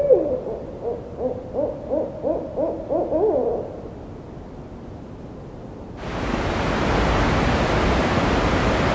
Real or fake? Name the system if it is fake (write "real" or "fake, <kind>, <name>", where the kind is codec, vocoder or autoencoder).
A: real